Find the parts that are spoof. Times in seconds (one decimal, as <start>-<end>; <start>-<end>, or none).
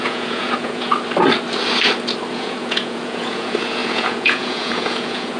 0.0-0.9; 2.3-5.4